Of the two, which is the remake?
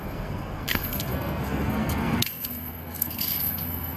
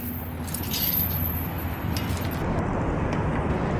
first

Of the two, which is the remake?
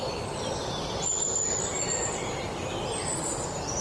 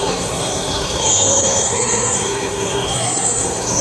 second